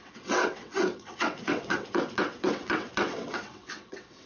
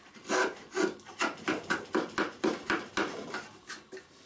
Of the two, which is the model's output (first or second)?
first